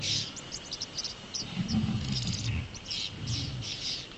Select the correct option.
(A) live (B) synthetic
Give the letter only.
A